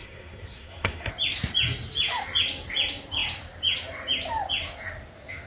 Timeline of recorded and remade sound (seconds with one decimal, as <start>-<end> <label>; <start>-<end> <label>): 0.0-1.1 remade; 1.1-5.5 recorded